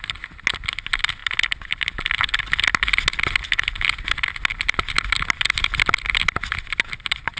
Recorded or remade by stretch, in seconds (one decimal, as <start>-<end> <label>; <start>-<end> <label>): 0.0-7.4 recorded